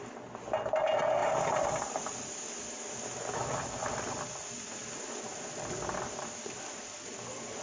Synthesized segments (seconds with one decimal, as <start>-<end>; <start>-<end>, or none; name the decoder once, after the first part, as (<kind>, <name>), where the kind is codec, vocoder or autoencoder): 1.2-5.8 (vocoder, BigVGAN v2)